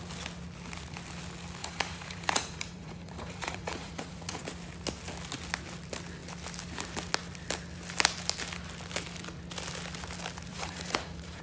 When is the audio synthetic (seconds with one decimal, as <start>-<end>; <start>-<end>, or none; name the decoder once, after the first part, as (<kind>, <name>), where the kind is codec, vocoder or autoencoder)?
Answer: 1.6-4.4 (vocoder, Vocos); 10.5-11.4